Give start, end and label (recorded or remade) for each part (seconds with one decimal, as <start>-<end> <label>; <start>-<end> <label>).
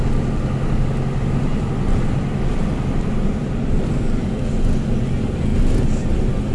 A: 0.0-6.5 recorded